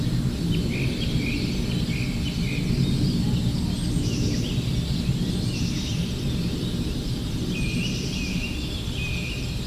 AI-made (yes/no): no